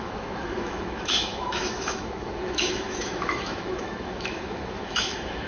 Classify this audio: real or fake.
fake